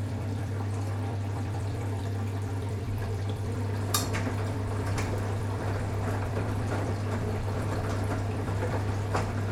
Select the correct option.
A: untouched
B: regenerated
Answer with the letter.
B